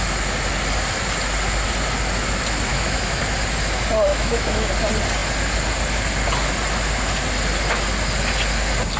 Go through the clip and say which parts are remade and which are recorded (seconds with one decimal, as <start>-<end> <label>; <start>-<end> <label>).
0.0-2.7 recorded; 2.7-3.2 remade; 3.2-4.1 recorded; 4.1-4.7 remade; 4.7-9.0 recorded